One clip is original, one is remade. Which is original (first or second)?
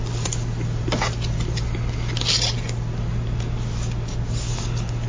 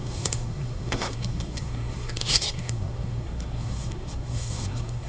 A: first